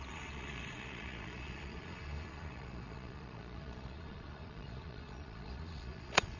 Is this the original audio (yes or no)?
no